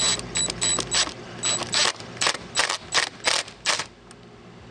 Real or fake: real